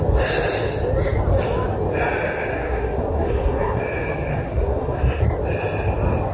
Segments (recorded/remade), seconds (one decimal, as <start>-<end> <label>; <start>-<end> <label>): 0.0-2.5 recorded; 2.5-3.8 remade; 3.8-4.3 recorded; 4.3-5.2 remade; 5.2-6.3 recorded

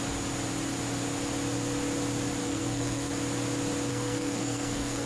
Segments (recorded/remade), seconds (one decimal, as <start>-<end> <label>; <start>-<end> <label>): 0.0-2.4 recorded; 2.4-3.1 remade; 3.1-3.9 recorded; 3.9-5.1 remade

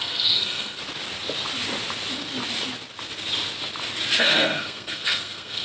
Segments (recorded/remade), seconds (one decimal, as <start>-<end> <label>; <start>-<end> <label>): 0.0-0.8 remade; 0.8-4.2 recorded; 4.2-5.6 remade

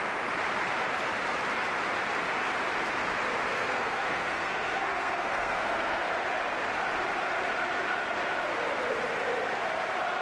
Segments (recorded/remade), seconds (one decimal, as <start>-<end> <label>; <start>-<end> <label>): 0.0-3.5 recorded; 3.5-6.1 remade; 6.1-10.2 recorded

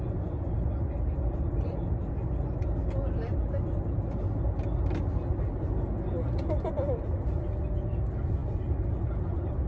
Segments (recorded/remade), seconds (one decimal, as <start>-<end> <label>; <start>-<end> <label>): 0.0-9.7 recorded

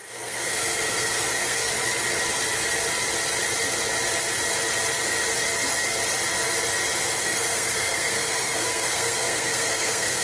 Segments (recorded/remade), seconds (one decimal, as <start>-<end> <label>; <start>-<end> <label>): 0.0-1.7 remade; 1.7-7.2 recorded; 7.2-10.2 remade